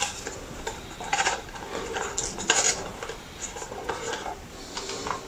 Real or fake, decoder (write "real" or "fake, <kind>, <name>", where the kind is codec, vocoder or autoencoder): real